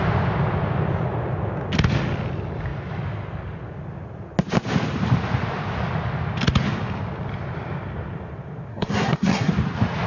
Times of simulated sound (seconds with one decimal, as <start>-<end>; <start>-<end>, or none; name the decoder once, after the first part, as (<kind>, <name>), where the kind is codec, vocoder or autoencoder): 8.7-9.5 (codec, SNAC)